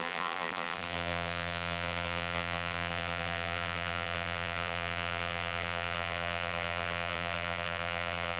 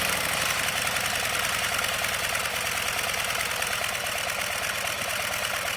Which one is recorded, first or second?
second